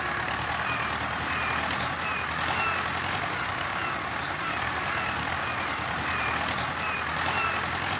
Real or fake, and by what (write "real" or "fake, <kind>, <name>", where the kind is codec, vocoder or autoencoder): real